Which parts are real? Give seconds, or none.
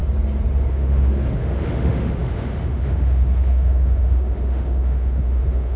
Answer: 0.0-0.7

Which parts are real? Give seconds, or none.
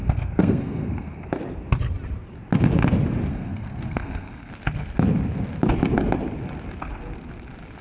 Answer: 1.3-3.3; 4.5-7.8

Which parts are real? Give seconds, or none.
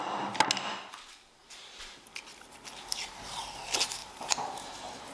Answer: 0.0-1.4; 3.2-4.0